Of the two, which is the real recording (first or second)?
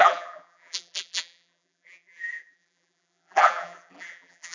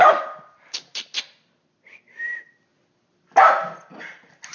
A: second